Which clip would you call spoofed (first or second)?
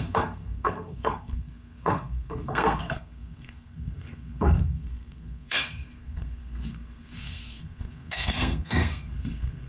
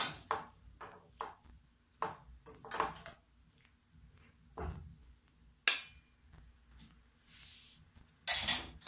first